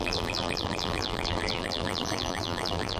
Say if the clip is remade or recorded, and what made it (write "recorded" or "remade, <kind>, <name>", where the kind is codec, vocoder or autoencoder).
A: remade, vocoder, BigVGAN v2